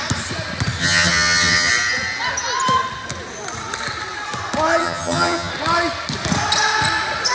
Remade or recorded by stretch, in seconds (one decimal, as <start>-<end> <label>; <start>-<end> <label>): 0.0-0.8 recorded; 0.8-1.7 remade; 1.7-4.8 recorded; 4.8-5.5 remade; 5.5-7.3 recorded